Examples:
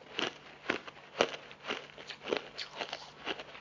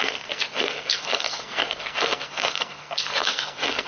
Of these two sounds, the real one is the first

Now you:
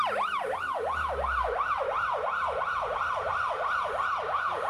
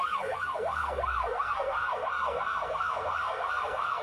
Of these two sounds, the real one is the first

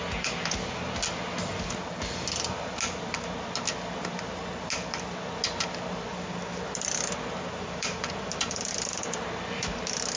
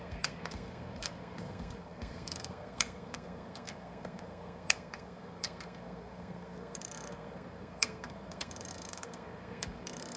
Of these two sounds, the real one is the first